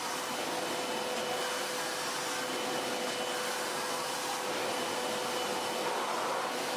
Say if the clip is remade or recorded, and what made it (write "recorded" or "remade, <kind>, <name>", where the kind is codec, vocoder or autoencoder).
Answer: recorded